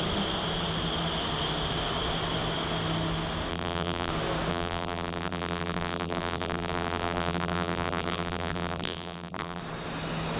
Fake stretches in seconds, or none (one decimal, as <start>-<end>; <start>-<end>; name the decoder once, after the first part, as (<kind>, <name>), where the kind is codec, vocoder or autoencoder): 3.5-4.1 (vocoder, BigVGAN v2); 4.5-9.6